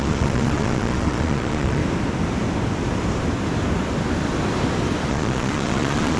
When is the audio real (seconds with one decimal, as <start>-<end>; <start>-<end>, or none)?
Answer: 1.8-5.1

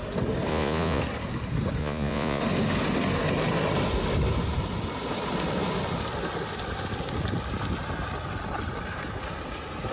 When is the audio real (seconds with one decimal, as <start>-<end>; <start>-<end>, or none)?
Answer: 0.0-0.5; 1.0-1.8; 2.4-9.9

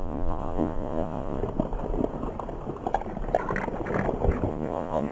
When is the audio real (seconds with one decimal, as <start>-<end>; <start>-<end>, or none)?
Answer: 1.4-4.5

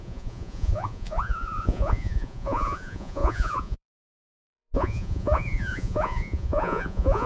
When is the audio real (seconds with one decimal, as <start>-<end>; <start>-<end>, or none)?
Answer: none

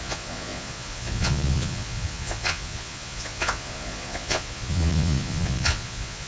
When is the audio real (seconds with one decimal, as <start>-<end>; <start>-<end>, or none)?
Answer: none

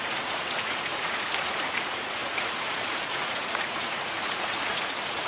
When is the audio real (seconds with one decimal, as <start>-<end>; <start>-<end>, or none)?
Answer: none

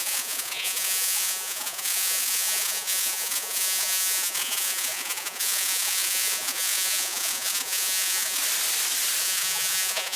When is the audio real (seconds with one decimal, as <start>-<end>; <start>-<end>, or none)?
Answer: 8.4-9.2